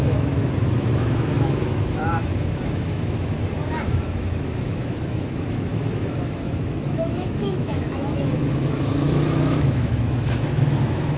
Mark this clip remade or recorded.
remade